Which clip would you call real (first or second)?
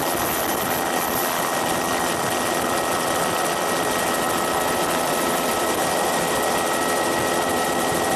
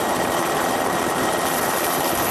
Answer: first